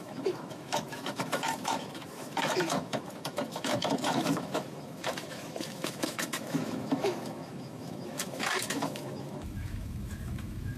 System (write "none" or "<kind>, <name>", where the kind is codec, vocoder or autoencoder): autoencoder, DAC-VAE